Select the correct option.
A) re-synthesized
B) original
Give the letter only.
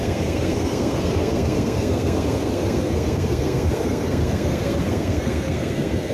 A